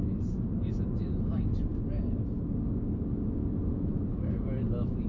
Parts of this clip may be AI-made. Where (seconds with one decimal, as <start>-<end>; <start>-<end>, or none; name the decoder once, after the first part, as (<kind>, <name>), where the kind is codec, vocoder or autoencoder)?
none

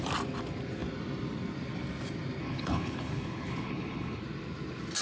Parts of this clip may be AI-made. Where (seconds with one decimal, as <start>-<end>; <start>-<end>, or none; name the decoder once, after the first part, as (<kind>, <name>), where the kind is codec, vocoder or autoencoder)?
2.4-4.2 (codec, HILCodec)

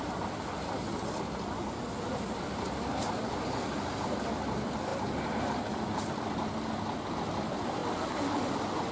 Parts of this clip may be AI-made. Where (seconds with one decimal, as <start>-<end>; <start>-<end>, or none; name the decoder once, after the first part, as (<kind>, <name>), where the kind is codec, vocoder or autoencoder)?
none

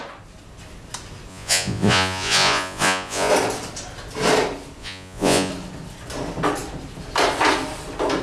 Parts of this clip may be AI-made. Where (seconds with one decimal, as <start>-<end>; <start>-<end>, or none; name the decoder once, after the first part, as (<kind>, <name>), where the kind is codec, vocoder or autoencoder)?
1.3-3.3 (vocoder, Vocos); 4.8-5.5

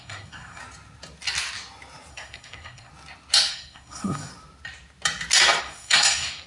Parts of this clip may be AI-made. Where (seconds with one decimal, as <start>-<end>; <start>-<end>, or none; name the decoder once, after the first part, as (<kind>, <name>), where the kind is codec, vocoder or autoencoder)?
0.0-0.6 (codec, SNAC); 2.1-2.9; 3.5-4.3; 5.6-6.5

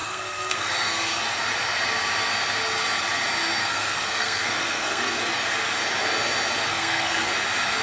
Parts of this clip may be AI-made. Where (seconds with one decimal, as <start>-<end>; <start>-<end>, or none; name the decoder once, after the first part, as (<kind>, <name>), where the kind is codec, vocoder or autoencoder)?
0.0-0.7 (codec, SNAC); 3.6-5.2; 6.7-7.3

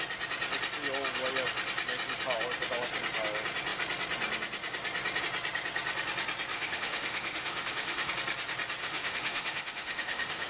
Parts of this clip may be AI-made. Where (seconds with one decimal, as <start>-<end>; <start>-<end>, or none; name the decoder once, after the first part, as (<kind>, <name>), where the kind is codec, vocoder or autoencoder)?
6.5-8.1 (autoencoder, DAC-VAE); 8.8-10.5